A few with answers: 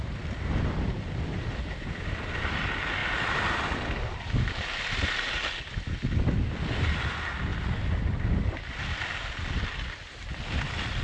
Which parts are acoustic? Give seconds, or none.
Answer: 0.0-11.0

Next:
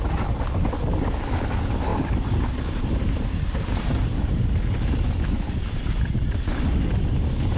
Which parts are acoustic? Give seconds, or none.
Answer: 0.0-1.9; 4.7-7.6

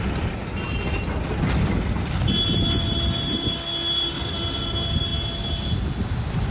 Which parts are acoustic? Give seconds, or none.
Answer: 0.0-6.5

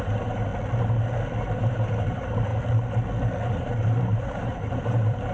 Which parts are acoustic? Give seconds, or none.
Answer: 0.5-1.4; 2.5-3.5

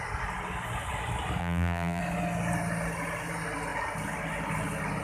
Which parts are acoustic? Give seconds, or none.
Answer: 0.0-1.4; 2.0-5.0

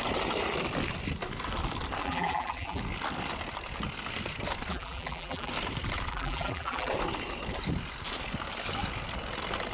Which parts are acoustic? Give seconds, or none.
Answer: 0.0-2.0; 2.8-4.7; 5.5-6.1; 6.9-9.7